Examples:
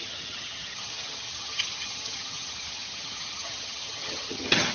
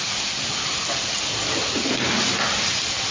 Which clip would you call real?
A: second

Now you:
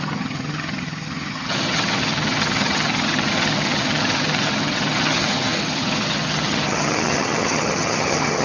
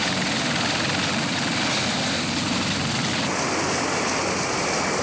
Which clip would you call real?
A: second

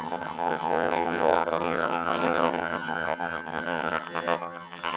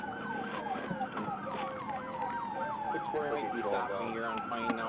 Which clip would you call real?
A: second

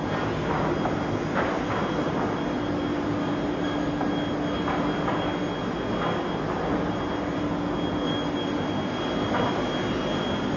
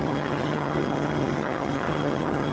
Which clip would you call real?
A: first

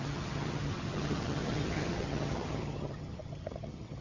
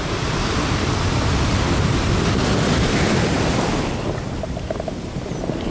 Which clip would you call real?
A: second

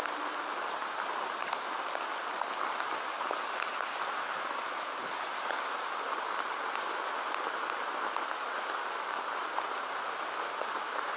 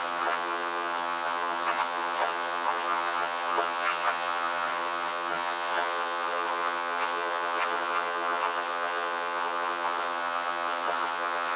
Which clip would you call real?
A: first